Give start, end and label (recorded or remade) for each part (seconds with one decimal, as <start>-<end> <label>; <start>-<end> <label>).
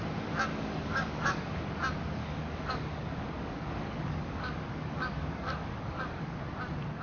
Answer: 0.0-0.5 recorded; 0.5-1.7 remade; 1.7-2.2 recorded; 2.2-6.4 remade; 6.4-7.0 recorded